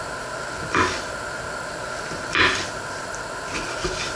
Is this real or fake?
real